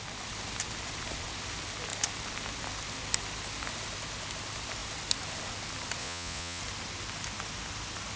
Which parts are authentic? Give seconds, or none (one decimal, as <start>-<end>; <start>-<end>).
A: 0.0-6.0; 6.6-8.2